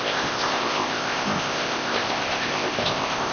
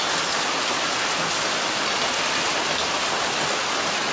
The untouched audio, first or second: second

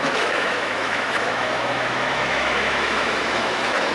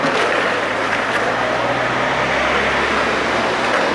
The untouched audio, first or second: second